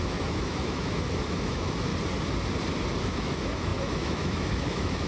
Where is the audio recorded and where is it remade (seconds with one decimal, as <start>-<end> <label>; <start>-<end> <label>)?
0.0-1.9 remade; 1.9-3.0 recorded; 3.0-5.1 remade